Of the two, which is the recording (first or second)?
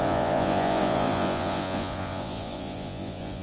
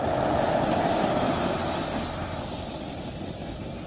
second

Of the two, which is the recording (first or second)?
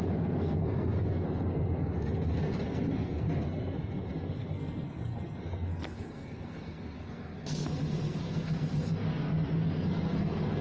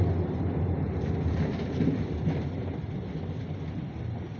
second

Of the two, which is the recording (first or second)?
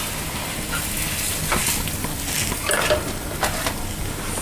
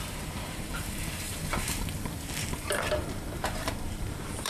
first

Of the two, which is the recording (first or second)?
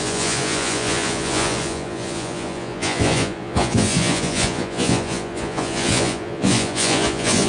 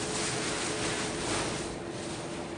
second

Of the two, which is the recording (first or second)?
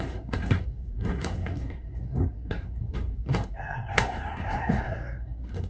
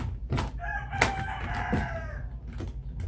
second